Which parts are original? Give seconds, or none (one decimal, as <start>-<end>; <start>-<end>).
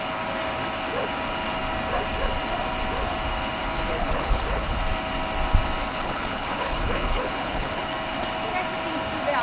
0.0-3.9; 4.8-5.9; 7.8-9.4